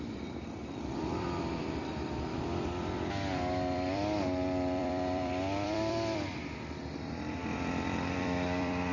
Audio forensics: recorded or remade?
remade